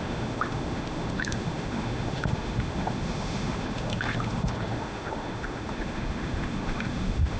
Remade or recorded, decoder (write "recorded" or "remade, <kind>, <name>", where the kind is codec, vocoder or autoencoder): remade, autoencoder, DAC-VAE